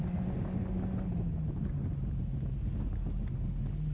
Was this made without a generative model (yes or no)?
yes